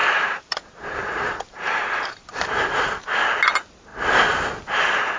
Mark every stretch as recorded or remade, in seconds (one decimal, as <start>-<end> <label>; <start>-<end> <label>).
0.0-2.8 remade; 2.8-5.2 recorded